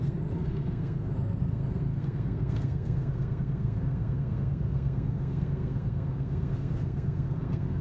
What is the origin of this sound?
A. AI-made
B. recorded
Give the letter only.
A